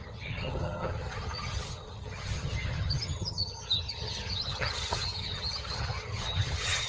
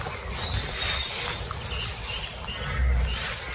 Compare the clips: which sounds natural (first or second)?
second